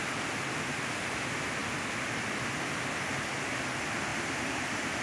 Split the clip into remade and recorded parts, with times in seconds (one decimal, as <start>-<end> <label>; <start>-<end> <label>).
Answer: 0.0-5.0 recorded